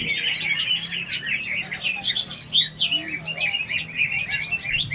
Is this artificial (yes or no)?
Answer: no